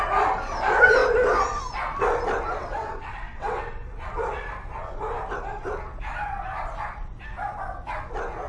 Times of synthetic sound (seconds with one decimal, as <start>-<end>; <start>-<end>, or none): 2.6-3.6